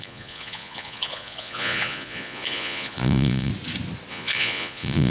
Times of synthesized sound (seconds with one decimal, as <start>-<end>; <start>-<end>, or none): 0.0-3.5; 4.1-5.1